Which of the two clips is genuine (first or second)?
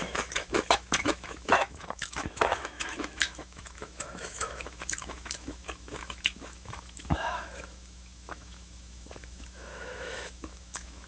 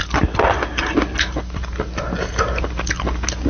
second